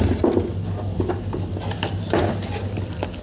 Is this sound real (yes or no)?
yes